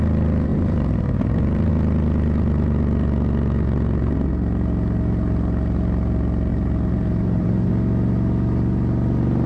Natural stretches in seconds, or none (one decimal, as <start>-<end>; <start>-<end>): 0.0-0.5; 1.7-6.5; 7.7-9.5